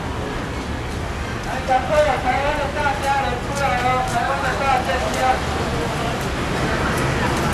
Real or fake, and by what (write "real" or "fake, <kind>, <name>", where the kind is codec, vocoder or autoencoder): real